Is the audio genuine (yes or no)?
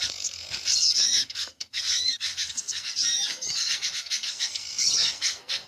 no